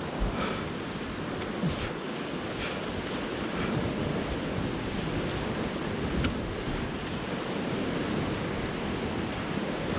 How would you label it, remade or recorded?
recorded